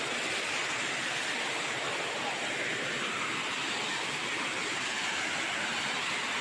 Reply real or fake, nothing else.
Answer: real